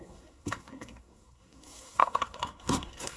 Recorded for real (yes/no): no